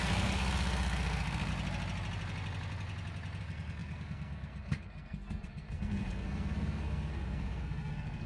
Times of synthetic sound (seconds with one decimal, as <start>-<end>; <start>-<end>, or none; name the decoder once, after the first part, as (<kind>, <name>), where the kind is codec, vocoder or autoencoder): 0.0-1.5 (codec, SNAC); 3.4-8.3